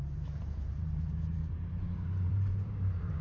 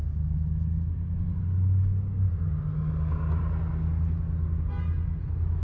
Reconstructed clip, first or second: first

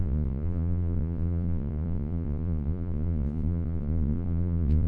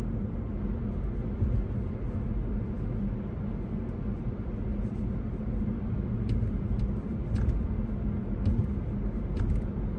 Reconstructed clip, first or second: first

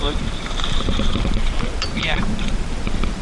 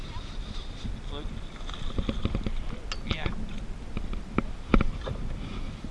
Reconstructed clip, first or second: first